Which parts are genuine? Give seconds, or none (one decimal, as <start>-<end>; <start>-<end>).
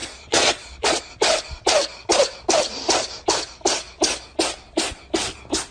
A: 1.0-5.7